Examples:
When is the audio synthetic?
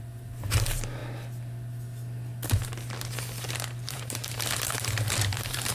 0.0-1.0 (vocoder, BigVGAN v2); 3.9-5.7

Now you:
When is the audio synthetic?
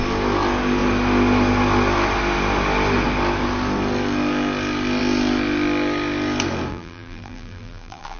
6.7-8.2 (vocoder, BigVGAN v2)